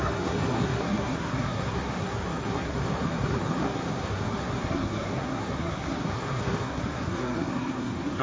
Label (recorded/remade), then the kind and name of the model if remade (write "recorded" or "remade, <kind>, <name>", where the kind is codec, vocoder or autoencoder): remade, codec, SNAC